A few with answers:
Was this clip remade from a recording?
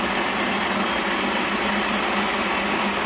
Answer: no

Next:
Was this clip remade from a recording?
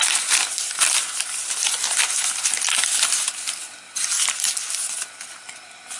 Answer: no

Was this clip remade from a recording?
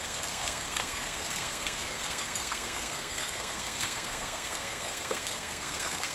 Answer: yes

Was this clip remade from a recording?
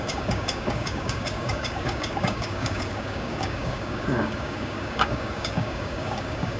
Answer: yes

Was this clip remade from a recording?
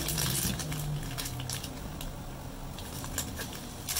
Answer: no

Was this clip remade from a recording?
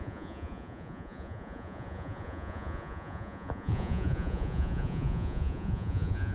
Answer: yes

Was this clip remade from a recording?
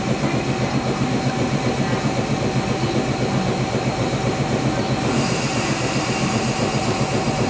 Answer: no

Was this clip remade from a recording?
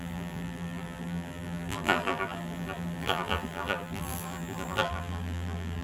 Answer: yes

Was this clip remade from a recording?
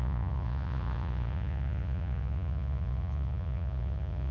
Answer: yes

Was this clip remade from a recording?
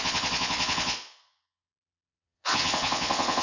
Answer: yes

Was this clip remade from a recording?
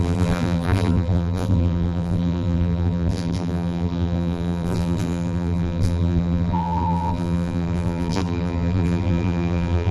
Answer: yes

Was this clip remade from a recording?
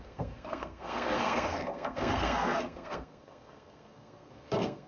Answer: yes